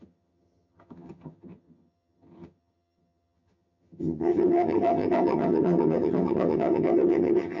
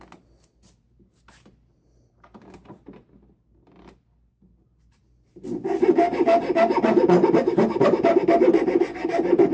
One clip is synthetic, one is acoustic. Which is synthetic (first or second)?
first